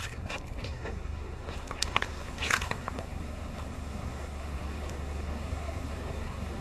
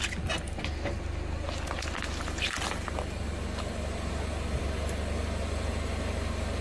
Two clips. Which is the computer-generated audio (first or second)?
first